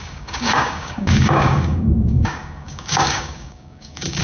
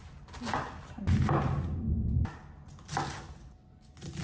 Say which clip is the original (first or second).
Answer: second